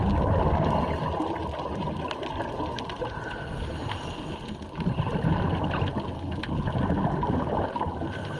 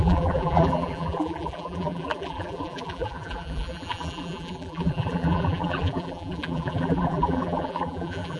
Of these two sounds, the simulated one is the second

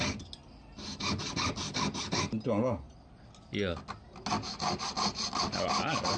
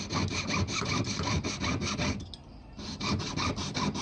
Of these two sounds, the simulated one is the second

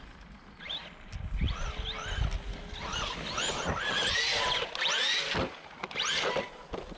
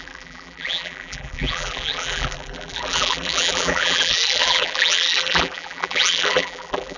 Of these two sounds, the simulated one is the second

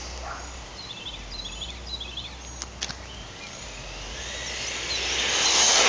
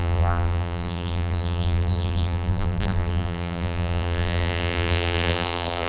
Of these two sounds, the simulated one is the second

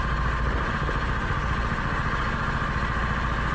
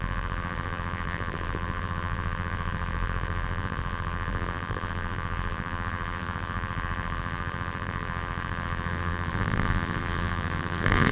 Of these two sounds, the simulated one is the second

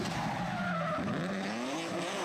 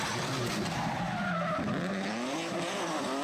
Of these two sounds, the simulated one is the second